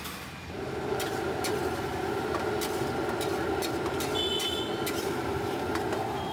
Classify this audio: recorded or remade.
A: recorded